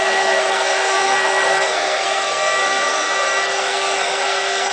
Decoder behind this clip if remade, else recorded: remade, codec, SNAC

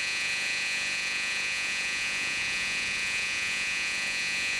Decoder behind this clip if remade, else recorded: remade, vocoder, Vocos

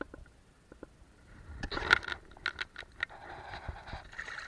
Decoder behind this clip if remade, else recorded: recorded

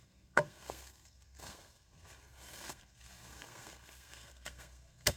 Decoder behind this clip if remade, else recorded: remade, codec, SNAC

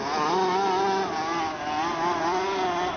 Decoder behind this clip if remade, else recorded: recorded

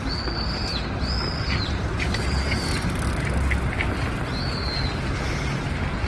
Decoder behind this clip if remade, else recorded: recorded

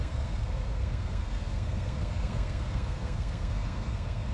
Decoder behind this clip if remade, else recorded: remade, codec, SNAC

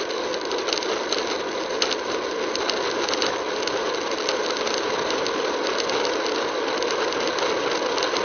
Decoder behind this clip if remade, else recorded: recorded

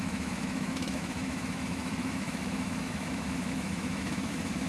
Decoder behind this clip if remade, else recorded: remade, autoencoder, DAC-VAE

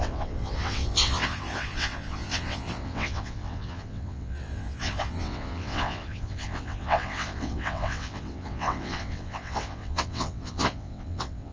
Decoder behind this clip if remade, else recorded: remade, vocoder, WaveNeXt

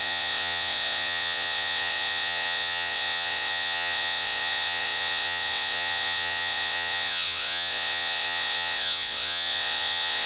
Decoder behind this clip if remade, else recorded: remade, vocoder, WaveNeXt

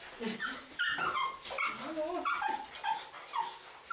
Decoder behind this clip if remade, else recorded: recorded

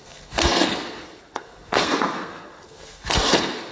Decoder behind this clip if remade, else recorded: remade, codec, SNAC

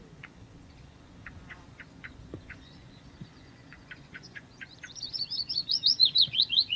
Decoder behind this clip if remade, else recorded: remade, vocoder, Vocos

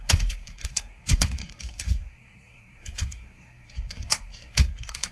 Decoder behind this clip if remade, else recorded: remade, codec, SNAC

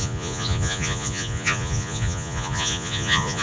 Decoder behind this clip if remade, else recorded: remade, vocoder, Vocos